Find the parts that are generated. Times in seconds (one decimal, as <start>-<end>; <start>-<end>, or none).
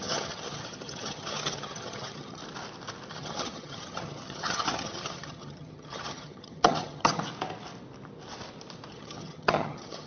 0.0-2.4; 3.1-7.2; 8.9-10.1